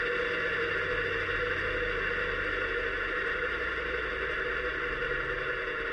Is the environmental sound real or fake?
real